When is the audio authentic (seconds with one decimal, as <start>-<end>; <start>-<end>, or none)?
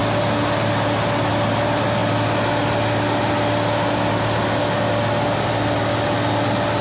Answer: 0.0-6.8